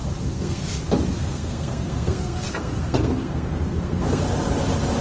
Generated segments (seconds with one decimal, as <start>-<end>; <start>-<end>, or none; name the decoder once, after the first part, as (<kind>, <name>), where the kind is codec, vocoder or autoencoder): 0.0-0.6 (codec, SNAC); 1.2-4.2

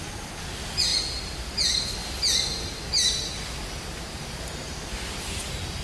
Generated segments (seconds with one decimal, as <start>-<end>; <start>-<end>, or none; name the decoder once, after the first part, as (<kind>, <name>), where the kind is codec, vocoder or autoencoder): none

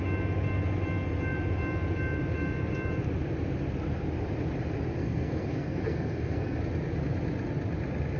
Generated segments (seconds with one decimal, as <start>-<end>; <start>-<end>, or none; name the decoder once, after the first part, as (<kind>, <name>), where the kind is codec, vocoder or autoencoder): 5.0-6.6 (codec, SNAC)